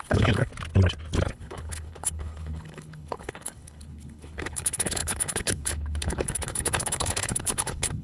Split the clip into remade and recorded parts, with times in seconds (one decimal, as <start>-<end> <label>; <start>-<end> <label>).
0.0-0.5 remade; 0.5-1.3 recorded; 1.3-8.0 remade